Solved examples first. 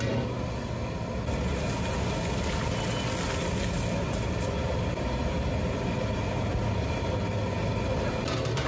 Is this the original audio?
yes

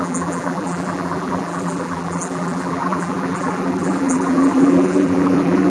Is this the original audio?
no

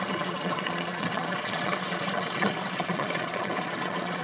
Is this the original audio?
no